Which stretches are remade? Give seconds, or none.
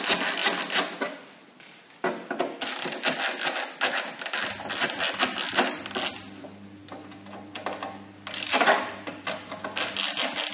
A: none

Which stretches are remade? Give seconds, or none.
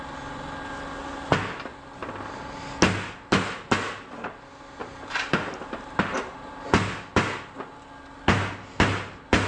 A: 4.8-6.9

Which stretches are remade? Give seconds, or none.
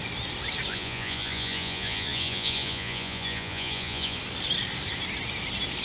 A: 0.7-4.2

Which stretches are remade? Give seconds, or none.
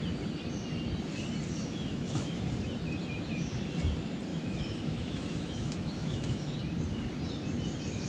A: 1.6-2.4; 4.3-6.6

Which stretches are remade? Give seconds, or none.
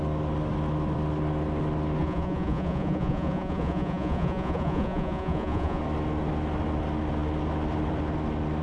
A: 2.0-5.8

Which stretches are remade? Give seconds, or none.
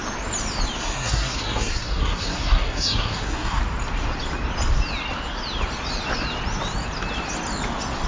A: 0.8-3.6